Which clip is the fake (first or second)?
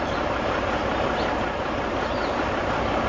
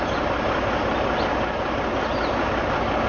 first